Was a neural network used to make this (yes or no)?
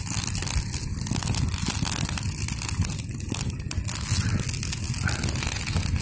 no